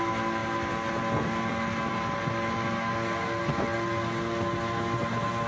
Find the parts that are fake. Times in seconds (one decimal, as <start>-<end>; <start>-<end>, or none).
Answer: none